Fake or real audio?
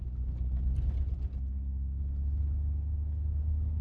real